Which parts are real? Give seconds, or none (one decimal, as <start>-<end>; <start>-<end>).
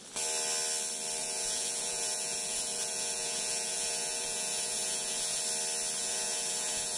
0.0-1.2; 5.4-6.0